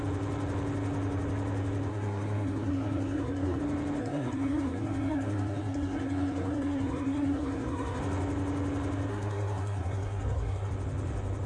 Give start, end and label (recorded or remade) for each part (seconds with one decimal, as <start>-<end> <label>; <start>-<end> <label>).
0.0-1.9 recorded; 1.9-3.6 remade; 3.6-4.0 recorded; 4.0-8.0 remade; 8.0-9.1 recorded; 9.1-10.7 remade; 10.7-11.5 recorded